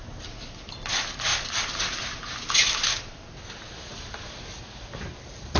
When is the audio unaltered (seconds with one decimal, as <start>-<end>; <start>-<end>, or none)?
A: 0.0-5.6